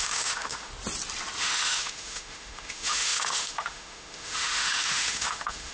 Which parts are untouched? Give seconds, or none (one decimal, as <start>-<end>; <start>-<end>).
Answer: 0.7-1.4